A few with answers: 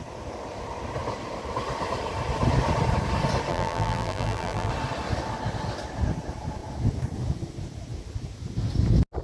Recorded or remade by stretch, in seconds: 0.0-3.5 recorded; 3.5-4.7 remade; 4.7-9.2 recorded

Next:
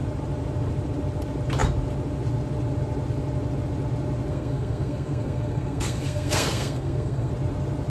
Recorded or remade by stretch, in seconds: 0.0-4.3 recorded; 4.3-7.3 remade; 7.3-7.9 recorded

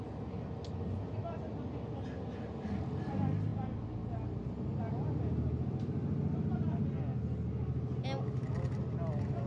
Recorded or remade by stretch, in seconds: 0.0-9.5 recorded

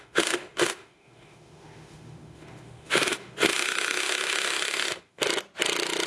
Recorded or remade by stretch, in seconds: 0.0-5.2 remade; 5.2-6.1 recorded

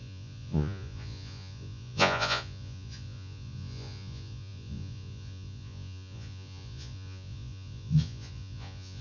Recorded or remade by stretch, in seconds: 0.0-9.0 remade

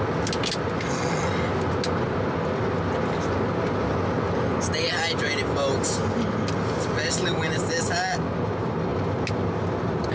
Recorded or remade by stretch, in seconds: 0.0-10.1 recorded

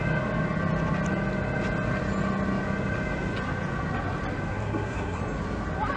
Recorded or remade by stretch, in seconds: 0.0-4.6 recorded; 4.6-5.2 remade; 5.2-6.0 recorded